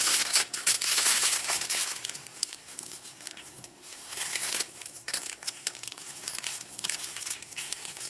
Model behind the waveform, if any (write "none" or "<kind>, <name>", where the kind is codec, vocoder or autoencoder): codec, SNAC